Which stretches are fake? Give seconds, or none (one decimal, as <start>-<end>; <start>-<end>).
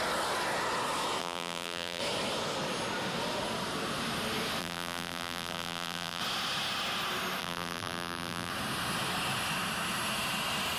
1.2-2.0; 4.6-6.2; 7.4-8.5